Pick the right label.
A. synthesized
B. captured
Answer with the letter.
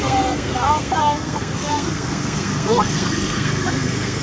A